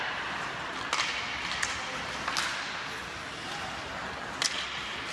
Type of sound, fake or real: real